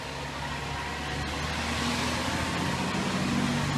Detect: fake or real real